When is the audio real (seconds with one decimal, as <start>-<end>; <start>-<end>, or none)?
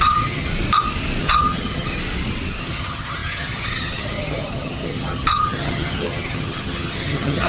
0.5-1.2; 1.9-2.6